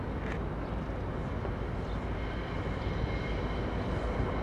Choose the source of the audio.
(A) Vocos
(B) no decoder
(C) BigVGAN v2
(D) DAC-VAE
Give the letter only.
B